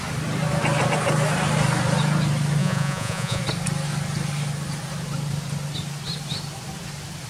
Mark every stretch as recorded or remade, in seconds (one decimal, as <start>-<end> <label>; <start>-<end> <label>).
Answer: 0.0-2.6 recorded; 2.6-3.4 remade; 3.4-7.3 recorded